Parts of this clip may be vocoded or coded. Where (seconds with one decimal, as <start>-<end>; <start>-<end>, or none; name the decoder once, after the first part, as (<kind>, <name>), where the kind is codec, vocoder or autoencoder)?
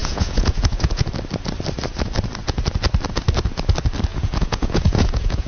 0.0-1.1 (vocoder, Vocos); 4.1-5.5